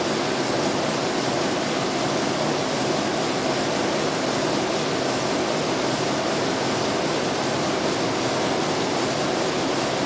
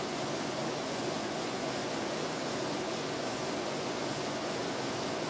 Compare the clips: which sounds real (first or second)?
first